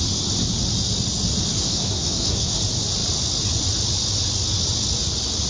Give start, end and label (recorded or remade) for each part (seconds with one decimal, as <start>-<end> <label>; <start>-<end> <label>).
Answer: 0.0-1.5 recorded; 1.5-2.6 remade; 2.6-5.5 recorded